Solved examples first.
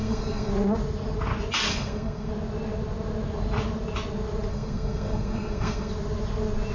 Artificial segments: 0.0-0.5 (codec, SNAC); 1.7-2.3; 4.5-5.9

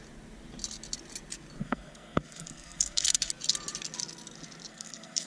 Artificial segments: 1.6-3.3 (codec, SNAC); 4.7-5.3